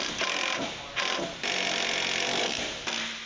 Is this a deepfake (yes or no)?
no